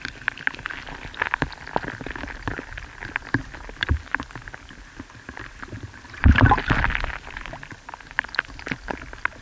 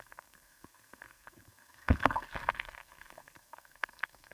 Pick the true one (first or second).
first